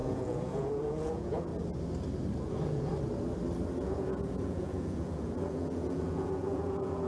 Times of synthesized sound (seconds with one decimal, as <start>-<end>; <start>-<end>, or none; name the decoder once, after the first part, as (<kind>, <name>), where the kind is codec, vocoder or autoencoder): 0.0-1.5 (vocoder, Vocos); 2.4-2.9; 3.8-7.1